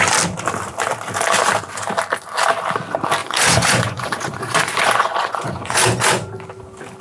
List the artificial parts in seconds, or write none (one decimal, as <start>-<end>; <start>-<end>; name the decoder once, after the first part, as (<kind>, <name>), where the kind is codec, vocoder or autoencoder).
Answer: 3.2-6.3 (vocoder, Vocos)